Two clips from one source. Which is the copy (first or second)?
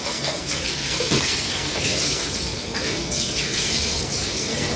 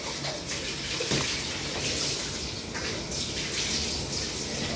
first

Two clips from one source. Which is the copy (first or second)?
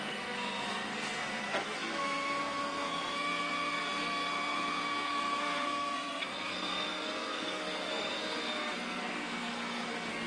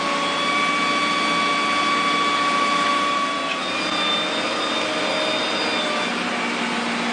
first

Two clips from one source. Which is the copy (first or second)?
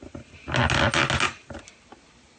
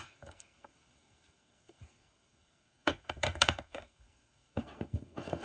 second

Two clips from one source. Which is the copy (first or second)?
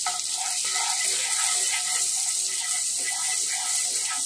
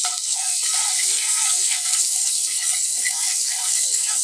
second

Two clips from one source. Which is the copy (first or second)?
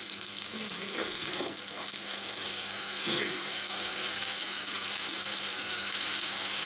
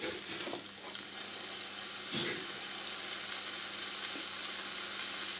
first